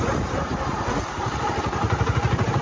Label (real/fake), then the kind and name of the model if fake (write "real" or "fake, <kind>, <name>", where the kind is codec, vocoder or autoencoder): fake, vocoder, BigVGAN v2